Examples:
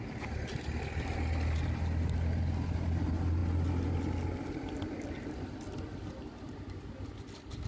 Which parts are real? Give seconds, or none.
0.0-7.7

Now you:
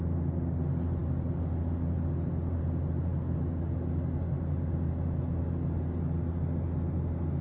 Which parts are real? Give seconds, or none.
0.0-7.4